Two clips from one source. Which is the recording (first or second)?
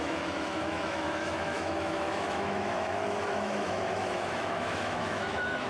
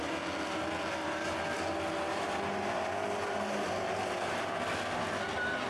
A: second